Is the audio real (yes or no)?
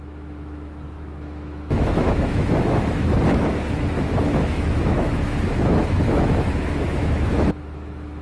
no